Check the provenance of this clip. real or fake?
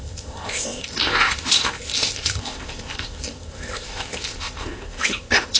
fake